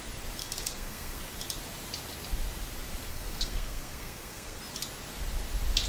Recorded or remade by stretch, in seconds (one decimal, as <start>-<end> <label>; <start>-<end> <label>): 0.0-0.4 recorded; 0.4-1.2 remade; 1.2-3.1 recorded; 3.1-4.6 remade; 4.6-5.9 recorded